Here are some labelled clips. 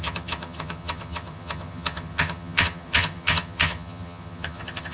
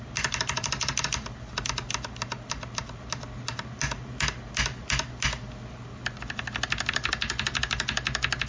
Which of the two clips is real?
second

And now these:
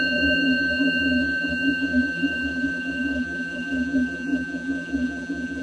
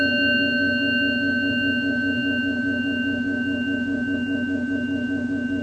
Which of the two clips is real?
second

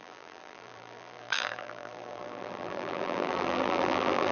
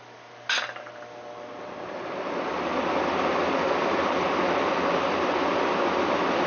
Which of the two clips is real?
second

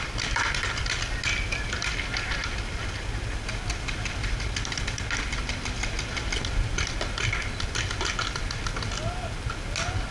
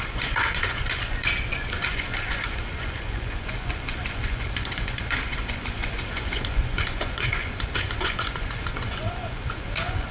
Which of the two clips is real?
first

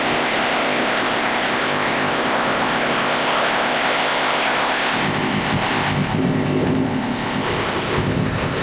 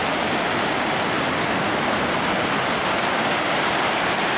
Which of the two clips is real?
second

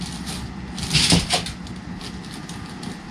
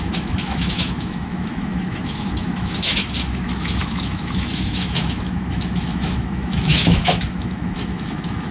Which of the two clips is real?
first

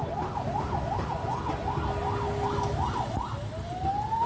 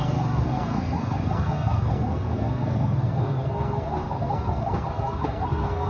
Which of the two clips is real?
first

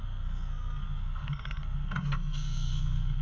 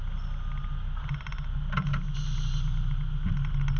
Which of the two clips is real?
second